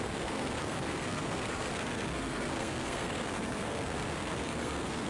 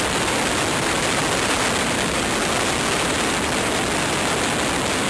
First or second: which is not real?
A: first